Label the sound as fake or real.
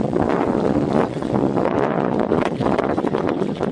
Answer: fake